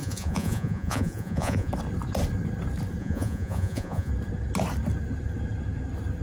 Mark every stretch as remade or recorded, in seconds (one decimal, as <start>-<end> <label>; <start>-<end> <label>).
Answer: 0.0-1.7 remade; 1.7-3.0 recorded; 3.0-4.1 remade; 4.1-6.2 recorded